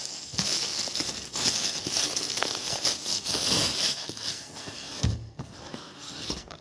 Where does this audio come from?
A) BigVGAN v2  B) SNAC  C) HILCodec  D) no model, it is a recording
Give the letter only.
B